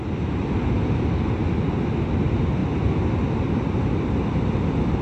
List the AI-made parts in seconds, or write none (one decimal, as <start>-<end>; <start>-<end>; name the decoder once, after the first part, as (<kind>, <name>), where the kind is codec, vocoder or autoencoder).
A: none